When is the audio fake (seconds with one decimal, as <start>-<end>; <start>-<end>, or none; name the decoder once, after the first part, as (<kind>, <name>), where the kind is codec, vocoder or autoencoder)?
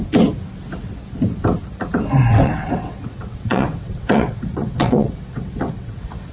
2.3-6.3 (vocoder, WaveNeXt)